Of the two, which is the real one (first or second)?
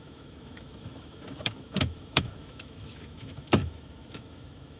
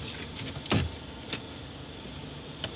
second